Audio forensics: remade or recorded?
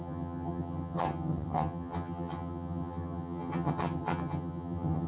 remade